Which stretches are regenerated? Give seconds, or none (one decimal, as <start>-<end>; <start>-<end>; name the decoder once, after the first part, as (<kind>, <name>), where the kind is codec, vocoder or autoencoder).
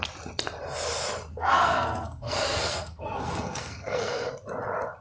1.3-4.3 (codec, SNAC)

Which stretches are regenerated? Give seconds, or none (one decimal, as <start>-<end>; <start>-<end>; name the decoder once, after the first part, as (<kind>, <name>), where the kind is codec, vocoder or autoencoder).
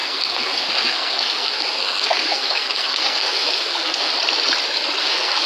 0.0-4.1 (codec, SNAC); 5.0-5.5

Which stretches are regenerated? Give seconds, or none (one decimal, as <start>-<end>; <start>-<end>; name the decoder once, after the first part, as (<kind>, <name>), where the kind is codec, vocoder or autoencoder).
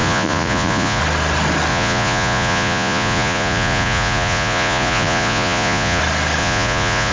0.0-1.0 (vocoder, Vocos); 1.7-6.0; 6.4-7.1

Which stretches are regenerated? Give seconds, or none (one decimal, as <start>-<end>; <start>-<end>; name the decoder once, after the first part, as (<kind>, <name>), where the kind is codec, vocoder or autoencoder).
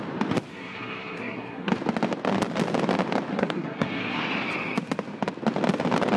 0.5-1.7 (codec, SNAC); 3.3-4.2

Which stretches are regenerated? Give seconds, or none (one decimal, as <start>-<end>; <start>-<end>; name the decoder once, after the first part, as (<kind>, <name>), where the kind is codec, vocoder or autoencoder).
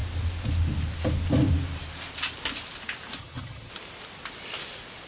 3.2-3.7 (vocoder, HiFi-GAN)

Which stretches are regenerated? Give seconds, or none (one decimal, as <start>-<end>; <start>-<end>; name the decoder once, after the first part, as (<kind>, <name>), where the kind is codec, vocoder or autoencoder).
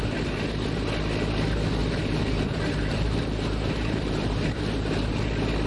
1.8-4.6 (vocoder, BigVGAN v2)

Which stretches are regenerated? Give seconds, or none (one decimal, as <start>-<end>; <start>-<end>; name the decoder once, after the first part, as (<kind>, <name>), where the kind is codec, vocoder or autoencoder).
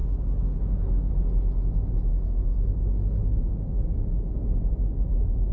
0.7-1.1 (codec, SNAC); 2.1-2.7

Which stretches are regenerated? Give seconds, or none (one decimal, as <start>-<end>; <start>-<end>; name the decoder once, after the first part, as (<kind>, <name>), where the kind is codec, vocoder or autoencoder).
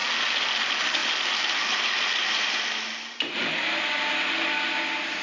none